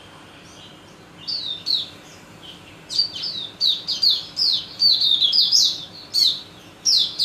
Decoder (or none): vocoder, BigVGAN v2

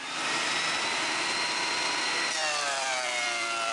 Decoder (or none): vocoder, BigVGAN v2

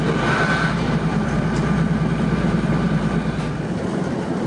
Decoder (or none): vocoder, BigVGAN v2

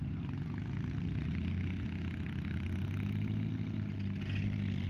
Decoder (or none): none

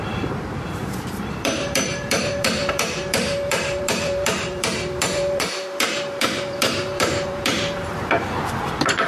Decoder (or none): vocoder, BigVGAN v2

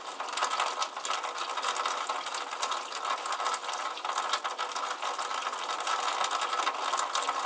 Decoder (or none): none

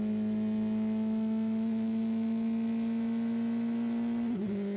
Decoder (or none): none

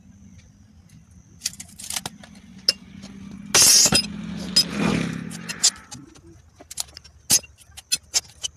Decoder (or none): none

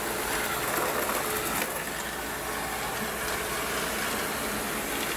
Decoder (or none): none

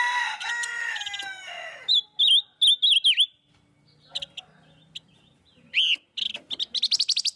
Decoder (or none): none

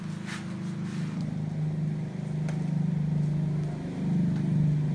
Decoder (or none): none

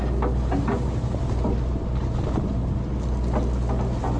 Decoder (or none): none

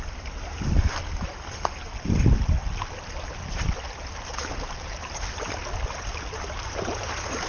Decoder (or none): none